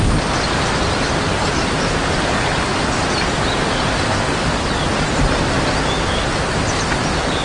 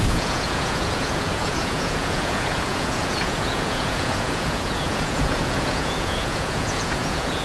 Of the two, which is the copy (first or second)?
second